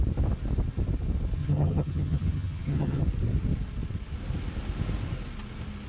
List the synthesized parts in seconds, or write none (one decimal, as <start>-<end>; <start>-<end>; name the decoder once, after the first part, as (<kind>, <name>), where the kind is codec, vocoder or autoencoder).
1.4-3.0 (vocoder, HiFi-GAN)